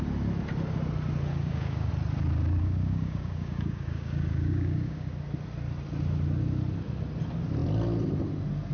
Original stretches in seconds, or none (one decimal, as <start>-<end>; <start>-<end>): 0.0-1.3; 1.9-2.6; 5.1-8.7